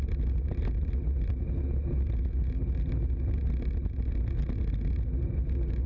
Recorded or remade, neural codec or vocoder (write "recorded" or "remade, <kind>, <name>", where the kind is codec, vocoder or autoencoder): recorded